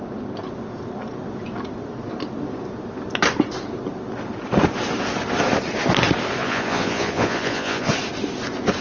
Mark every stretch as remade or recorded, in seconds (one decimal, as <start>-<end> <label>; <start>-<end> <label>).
0.0-6.4 recorded; 6.4-7.9 remade; 7.9-8.8 recorded